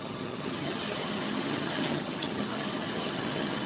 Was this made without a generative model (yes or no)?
no